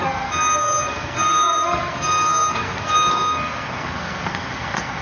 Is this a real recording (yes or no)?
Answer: no